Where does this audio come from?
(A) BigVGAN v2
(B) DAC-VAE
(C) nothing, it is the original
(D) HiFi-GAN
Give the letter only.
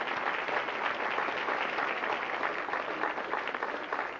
C